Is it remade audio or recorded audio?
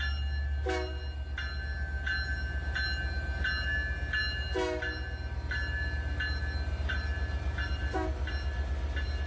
recorded